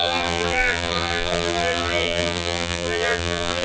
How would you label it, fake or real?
fake